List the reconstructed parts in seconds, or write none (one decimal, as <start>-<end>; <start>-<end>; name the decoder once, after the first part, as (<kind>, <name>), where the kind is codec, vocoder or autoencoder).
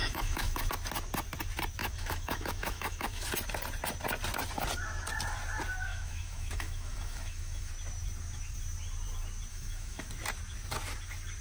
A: 0.0-0.7 (autoencoder, DAC-VAE); 1.8-3.3; 5.9-7.7; 9.5-10.1